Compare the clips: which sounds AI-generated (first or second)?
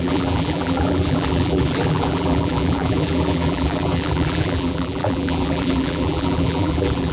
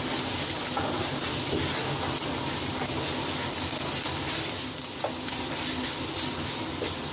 first